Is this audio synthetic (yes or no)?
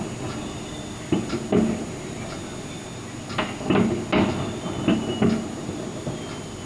no